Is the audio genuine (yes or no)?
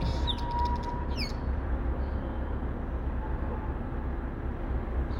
yes